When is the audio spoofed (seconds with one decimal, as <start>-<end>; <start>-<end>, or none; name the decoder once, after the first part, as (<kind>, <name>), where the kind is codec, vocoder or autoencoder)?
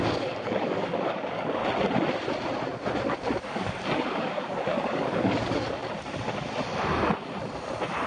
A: 0.0-1.6 (codec, DAC); 3.4-5.8